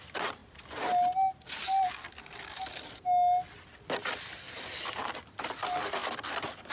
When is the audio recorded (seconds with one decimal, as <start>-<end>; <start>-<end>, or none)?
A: 0.0-6.7